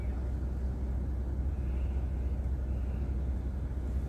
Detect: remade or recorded recorded